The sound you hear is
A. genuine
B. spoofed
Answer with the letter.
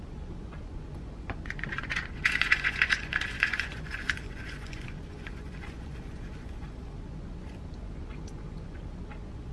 B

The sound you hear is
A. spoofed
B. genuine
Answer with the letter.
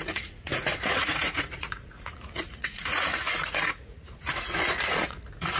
A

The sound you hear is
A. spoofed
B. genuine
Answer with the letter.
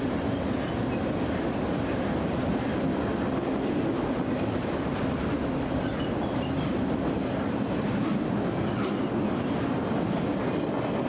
B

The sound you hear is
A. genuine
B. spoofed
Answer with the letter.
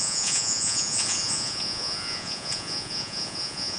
B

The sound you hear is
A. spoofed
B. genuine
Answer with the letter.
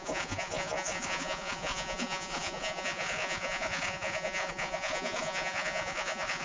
A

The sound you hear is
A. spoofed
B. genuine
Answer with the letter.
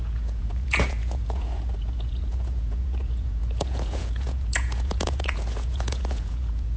A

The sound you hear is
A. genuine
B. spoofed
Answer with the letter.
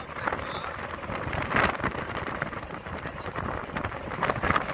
A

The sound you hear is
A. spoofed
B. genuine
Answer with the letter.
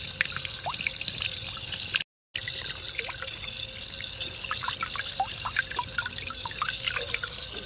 B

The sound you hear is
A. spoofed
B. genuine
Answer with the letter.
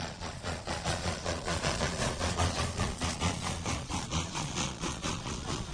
A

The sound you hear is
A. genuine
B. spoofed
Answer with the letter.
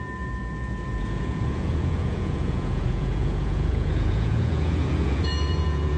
B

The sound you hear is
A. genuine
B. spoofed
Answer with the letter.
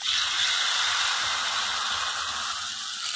A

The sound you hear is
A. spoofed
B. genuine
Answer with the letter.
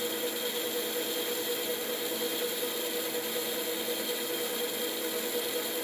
B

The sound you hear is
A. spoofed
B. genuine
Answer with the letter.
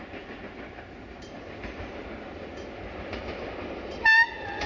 B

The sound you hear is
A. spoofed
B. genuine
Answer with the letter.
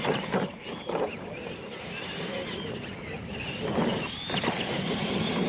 B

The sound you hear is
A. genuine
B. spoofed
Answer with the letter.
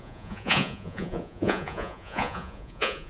B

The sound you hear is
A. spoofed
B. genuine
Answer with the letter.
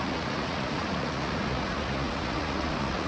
A